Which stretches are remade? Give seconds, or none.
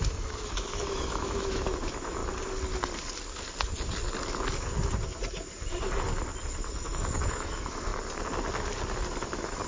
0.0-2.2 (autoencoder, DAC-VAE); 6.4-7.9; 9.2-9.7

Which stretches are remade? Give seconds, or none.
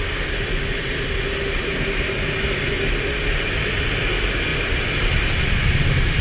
none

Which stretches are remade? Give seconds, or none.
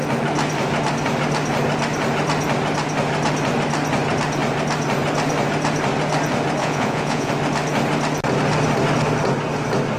6.6-7.3 (vocoder, Vocos)